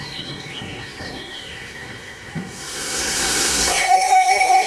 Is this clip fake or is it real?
fake